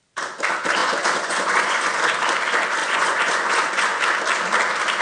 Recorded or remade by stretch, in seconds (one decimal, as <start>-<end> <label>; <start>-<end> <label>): 0.0-0.8 recorded; 0.8-2.0 remade; 2.0-2.8 recorded; 2.8-4.0 remade; 4.0-5.0 recorded